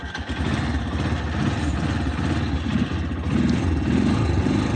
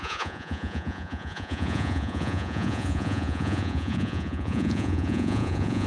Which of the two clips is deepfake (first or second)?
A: second